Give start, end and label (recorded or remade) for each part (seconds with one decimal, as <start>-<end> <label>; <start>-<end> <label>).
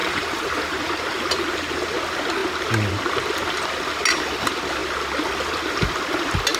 0.0-0.9 remade; 0.9-6.6 recorded